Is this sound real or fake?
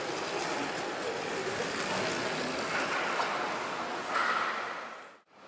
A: real